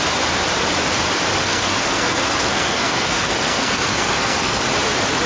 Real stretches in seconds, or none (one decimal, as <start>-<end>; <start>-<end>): 0.0-1.4; 4.6-5.3